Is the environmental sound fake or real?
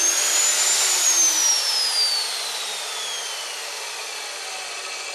real